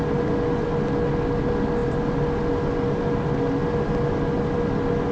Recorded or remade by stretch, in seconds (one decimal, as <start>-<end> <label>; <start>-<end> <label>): 0.0-5.1 recorded